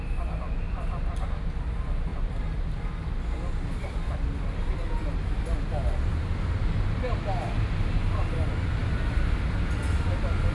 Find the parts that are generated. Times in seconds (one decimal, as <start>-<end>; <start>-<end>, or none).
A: none